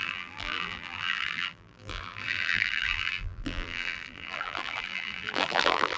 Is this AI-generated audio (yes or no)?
yes